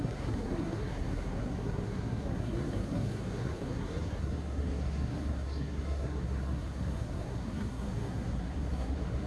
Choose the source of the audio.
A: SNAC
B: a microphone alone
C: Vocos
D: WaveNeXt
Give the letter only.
A